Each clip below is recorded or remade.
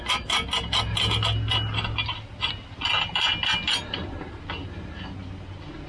recorded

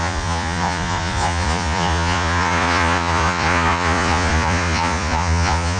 remade